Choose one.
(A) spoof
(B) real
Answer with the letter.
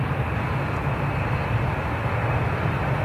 B